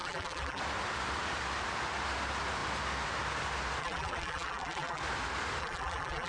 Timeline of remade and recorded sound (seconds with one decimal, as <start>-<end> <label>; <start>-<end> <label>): 0.0-0.6 remade; 0.6-3.8 recorded; 3.8-5.0 remade; 5.0-5.6 recorded; 5.6-6.3 remade